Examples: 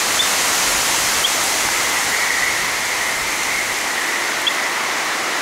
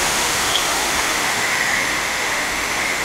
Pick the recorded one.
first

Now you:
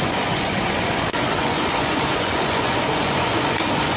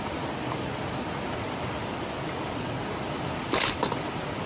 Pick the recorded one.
second